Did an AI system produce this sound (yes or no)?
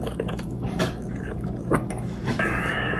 yes